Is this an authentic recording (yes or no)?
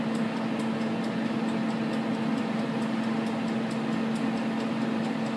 yes